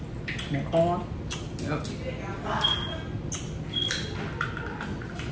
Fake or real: real